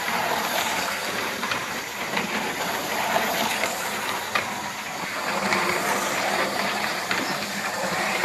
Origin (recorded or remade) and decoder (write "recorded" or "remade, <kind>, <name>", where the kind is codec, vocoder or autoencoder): remade, vocoder, BigVGAN v2